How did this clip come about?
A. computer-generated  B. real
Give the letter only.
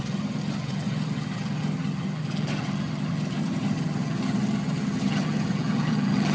A